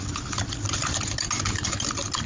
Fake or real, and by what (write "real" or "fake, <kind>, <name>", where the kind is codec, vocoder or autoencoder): real